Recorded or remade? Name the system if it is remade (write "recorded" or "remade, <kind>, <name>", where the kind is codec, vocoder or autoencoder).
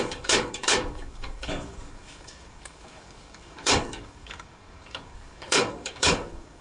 remade, codec, DAC